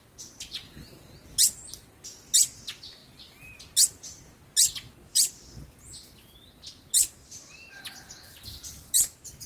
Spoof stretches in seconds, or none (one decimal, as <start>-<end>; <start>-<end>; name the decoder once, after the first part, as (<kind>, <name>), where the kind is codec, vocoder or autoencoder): none